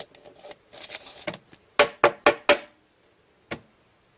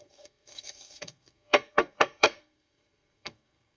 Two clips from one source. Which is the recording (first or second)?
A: first